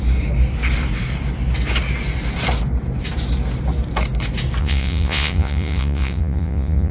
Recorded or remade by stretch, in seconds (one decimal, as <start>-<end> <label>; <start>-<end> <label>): 0.0-4.6 recorded; 4.6-6.9 remade